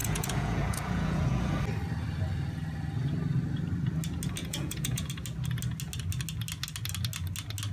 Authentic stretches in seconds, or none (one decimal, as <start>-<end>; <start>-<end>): 1.6-4.4; 5.1-7.7